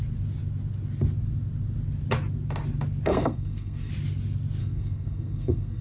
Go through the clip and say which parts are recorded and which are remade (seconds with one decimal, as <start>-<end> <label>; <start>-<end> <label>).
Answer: 0.0-3.1 recorded; 3.1-3.9 remade; 3.9-4.6 recorded; 4.6-5.8 remade